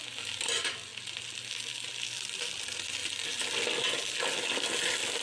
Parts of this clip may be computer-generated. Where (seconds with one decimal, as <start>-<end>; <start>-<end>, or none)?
none